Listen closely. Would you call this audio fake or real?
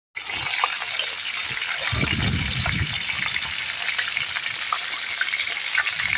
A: real